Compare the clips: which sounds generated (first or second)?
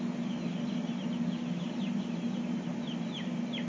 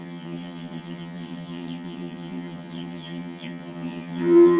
second